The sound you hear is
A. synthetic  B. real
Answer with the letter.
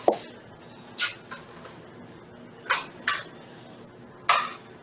B